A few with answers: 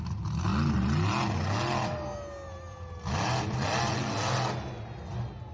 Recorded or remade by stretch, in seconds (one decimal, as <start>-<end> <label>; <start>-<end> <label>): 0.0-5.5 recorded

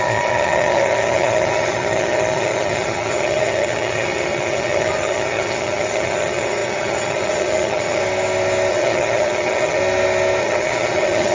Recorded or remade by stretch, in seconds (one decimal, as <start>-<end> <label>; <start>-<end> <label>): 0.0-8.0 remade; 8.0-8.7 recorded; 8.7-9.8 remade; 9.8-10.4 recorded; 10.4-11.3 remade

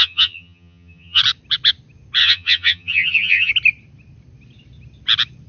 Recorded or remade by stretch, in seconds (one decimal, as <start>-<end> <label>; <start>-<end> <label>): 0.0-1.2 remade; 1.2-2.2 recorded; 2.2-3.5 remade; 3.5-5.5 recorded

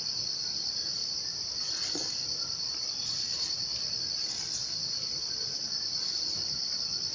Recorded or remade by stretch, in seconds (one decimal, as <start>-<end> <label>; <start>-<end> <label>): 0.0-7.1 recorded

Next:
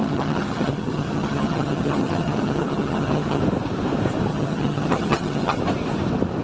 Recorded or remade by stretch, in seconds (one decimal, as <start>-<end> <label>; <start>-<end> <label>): 0.0-3.4 remade; 3.4-4.3 recorded; 4.3-5.6 remade; 5.6-6.4 recorded

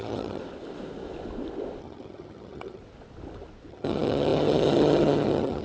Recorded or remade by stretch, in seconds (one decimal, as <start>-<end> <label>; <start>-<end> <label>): 0.0-0.4 remade; 0.4-1.8 recorded; 1.8-2.8 remade; 2.8-3.7 recorded; 3.7-5.6 remade

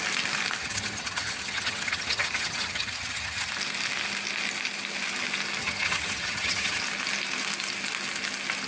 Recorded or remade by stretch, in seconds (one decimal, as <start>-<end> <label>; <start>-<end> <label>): 0.0-0.6 recorded; 0.6-3.5 remade; 3.5-5.6 recorded; 5.6-6.8 remade; 6.8-8.7 recorded